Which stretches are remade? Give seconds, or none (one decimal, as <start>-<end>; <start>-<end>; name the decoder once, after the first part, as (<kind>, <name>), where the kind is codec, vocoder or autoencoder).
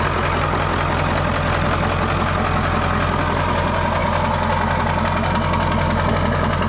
none